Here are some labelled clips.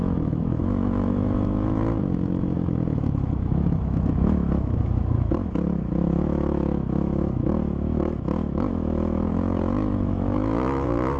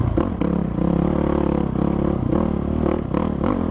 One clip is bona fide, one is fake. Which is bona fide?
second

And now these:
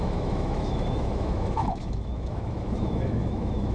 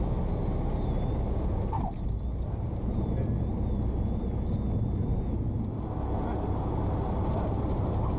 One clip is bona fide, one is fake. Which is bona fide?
second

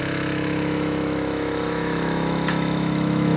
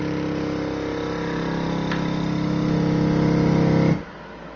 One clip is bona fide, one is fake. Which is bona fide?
second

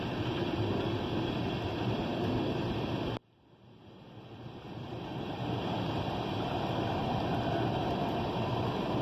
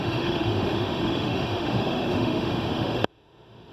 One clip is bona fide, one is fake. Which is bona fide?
first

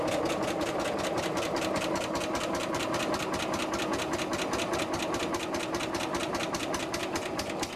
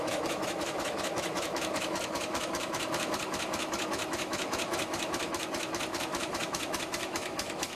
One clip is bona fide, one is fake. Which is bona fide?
first